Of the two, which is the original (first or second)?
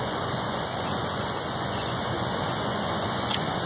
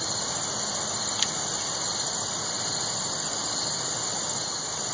second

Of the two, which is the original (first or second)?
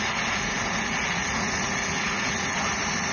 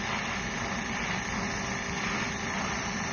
second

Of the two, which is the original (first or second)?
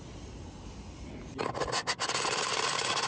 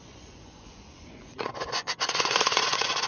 first